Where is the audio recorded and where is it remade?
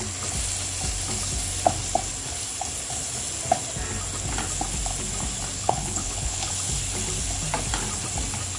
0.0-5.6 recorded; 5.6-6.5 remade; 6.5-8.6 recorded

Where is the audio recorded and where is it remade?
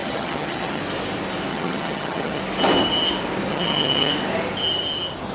0.0-0.8 remade; 0.8-1.5 recorded; 1.5-2.4 remade; 2.4-3.5 recorded; 3.5-4.1 remade; 4.1-5.3 recorded